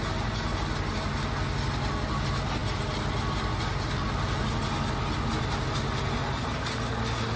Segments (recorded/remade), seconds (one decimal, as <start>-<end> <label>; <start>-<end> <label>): 0.0-7.4 recorded